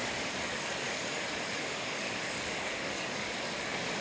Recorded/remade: remade